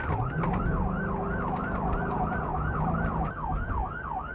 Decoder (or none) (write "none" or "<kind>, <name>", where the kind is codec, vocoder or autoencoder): none